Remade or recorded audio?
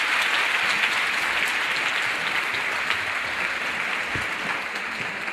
recorded